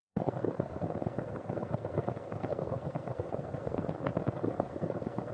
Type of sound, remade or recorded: remade